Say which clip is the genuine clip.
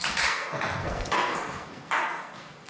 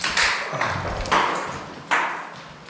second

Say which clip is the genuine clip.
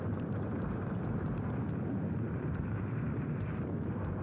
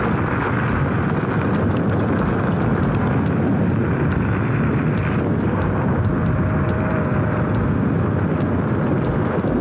second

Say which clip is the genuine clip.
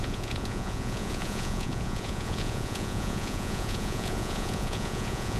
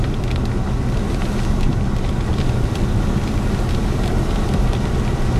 second